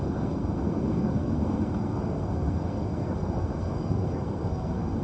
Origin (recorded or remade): remade